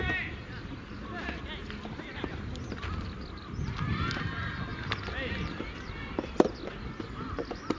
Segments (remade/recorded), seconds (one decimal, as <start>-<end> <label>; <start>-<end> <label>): 0.0-2.1 recorded; 2.1-2.7 remade; 2.7-7.8 recorded